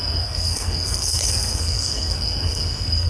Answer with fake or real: fake